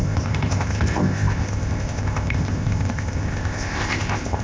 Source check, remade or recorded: remade